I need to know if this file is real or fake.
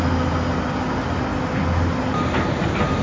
real